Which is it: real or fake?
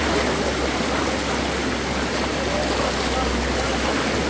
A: real